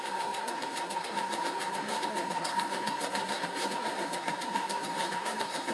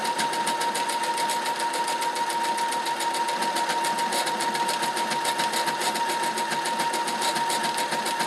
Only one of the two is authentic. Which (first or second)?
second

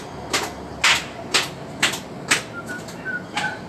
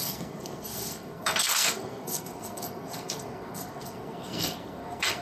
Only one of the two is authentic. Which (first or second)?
first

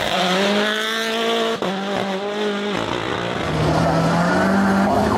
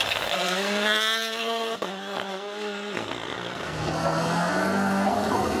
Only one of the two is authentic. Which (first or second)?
first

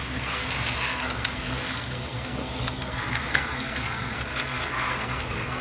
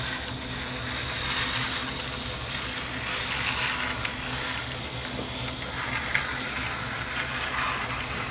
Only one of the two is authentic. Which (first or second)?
second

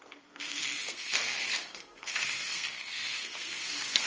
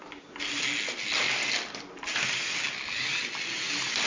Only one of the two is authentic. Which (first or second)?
second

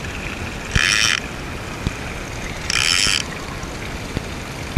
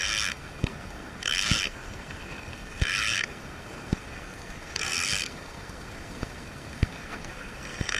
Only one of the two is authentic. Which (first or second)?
first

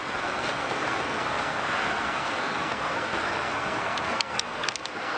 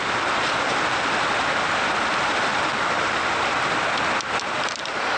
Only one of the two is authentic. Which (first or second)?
second